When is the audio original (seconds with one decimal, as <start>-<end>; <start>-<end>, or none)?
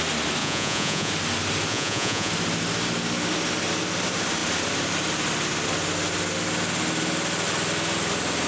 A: 0.0-0.4; 1.1-1.7; 2.3-8.5